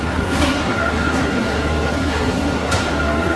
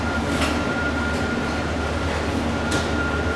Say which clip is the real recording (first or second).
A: second